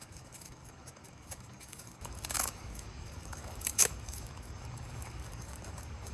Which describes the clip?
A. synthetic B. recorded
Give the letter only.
A